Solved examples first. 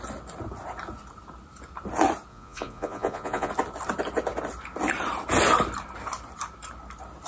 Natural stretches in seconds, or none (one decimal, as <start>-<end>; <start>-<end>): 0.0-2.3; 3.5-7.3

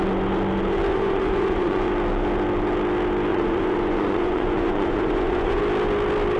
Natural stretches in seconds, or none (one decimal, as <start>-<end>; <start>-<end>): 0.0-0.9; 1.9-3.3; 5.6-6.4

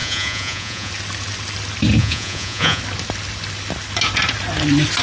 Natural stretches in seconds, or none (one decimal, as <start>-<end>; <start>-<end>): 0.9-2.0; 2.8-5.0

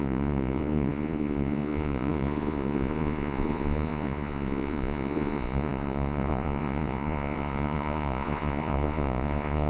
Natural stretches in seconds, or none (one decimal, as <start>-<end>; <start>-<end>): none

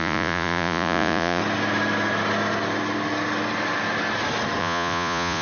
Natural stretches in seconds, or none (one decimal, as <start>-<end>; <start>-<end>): 1.4-4.6